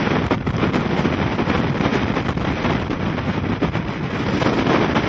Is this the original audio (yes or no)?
yes